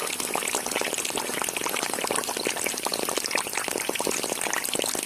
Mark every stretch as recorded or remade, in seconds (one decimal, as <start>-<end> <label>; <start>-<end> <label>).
0.0-5.1 recorded